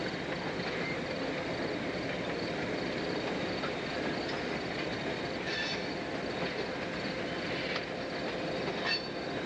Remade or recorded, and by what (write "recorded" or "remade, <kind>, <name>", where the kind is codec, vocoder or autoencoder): recorded